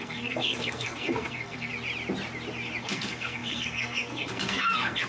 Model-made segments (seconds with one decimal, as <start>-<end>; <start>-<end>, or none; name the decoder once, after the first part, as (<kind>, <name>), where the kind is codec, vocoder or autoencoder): 0.0-1.7 (codec, SNAC); 2.8-5.1